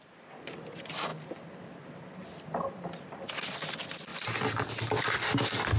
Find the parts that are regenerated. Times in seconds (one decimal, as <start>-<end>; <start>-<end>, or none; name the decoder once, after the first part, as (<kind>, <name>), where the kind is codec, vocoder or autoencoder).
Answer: none